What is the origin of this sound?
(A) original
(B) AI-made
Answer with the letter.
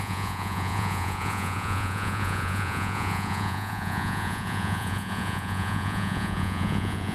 B